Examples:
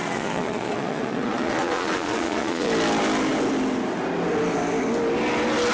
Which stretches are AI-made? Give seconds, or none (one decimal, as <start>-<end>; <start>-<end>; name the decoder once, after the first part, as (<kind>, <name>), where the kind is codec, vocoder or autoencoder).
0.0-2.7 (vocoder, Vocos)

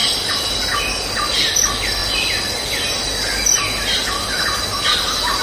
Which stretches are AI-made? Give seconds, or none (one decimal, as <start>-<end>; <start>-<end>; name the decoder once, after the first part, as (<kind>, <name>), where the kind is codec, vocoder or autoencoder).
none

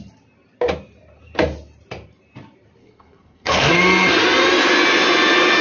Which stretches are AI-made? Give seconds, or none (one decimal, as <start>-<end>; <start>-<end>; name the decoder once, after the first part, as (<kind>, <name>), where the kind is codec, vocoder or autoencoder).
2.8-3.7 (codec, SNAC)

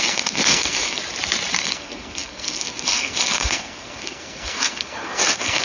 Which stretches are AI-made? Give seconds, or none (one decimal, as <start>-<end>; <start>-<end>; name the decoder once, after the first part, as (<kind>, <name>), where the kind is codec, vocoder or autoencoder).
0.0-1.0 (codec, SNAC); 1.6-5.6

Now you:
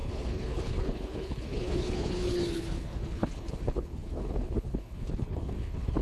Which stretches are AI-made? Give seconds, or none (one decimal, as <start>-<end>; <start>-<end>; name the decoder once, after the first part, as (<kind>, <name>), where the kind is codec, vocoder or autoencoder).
0.0-6.0 (codec, HILCodec)